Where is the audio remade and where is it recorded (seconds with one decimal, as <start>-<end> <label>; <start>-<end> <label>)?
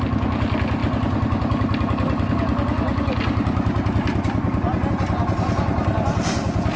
0.0-6.8 recorded